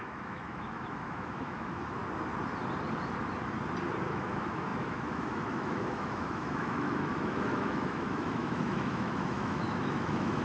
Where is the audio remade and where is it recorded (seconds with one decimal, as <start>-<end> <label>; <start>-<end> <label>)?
0.0-2.0 remade; 2.0-4.1 recorded; 4.1-10.4 remade